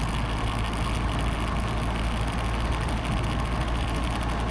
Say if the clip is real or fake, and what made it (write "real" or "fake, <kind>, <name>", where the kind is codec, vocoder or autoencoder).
real